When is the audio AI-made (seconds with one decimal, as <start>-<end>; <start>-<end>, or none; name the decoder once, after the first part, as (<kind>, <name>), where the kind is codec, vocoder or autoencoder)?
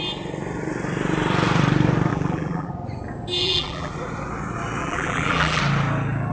2.1-2.7 (vocoder, BigVGAN v2); 3.4-3.9; 4.8-5.6